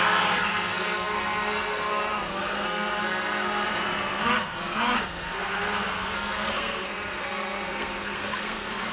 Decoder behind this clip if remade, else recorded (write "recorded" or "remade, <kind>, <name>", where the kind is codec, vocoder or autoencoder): remade, codec, SNAC